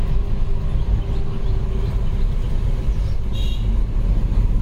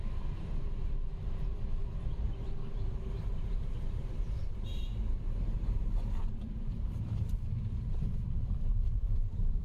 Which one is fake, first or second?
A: second